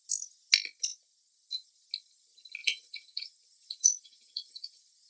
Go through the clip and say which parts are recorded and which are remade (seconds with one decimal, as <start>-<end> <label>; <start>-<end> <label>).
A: 0.0-2.6 recorded; 2.6-5.1 remade